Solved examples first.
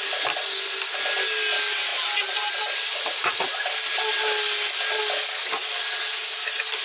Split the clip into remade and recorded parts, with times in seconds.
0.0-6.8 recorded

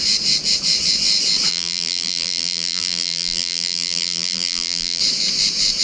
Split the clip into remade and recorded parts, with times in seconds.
0.0-1.5 recorded; 1.5-5.0 remade; 5.0-5.8 recorded

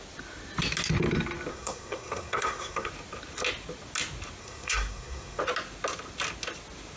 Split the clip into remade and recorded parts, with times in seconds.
0.0-1.5 recorded; 1.5-2.9 remade; 2.9-4.4 recorded; 4.4-5.4 remade; 5.4-7.0 recorded

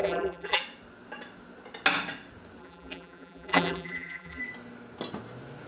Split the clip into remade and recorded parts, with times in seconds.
0.0-0.6 remade; 0.6-2.6 recorded; 2.6-4.4 remade; 4.4-5.7 recorded

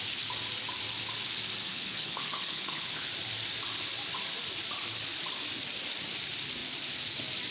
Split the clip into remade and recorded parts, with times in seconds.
0.0-1.7 recorded; 1.7-3.1 remade; 3.1-7.5 recorded

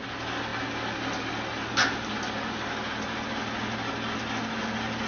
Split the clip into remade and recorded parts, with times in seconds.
0.0-5.1 recorded

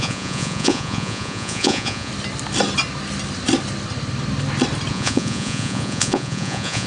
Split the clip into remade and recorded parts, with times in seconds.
0.0-2.1 remade; 2.1-4.9 recorded; 4.9-6.9 remade